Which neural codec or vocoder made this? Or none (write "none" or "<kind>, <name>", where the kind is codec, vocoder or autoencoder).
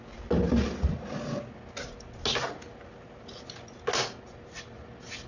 none